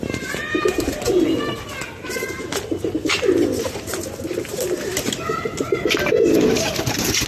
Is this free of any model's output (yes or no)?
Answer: yes